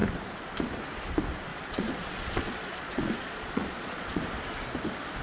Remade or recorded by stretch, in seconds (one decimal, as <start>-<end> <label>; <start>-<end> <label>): 0.0-1.5 recorded; 1.5-4.2 remade; 4.2-5.2 recorded